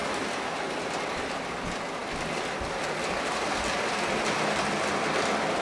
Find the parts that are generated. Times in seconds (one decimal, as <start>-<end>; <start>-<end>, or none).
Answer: 2.0-5.6